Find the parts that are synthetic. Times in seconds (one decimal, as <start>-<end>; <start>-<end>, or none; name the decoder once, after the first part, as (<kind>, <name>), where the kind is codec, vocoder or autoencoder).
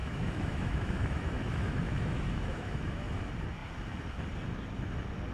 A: 0.0-3.2 (autoencoder, DAC-VAE)